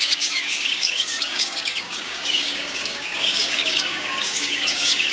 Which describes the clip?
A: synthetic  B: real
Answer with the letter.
A